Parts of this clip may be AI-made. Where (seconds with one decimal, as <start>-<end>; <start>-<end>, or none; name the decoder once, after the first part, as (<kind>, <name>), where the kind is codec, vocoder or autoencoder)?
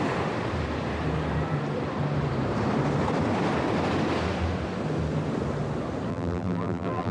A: 6.1-7.1 (vocoder, BigVGAN v2)